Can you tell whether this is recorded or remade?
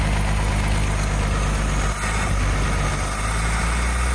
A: recorded